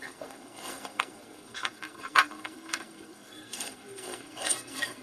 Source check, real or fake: fake